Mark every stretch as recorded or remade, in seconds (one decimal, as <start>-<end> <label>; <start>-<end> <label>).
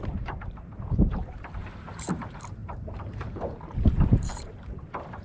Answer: 0.0-5.2 remade